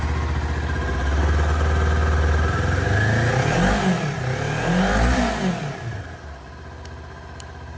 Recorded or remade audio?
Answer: recorded